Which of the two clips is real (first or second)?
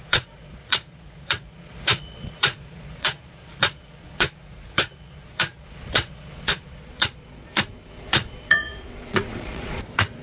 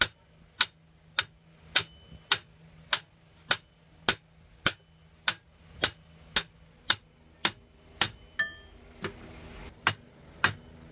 second